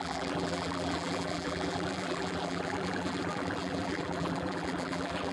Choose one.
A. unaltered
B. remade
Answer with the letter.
B